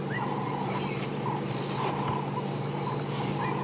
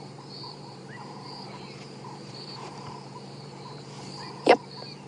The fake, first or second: second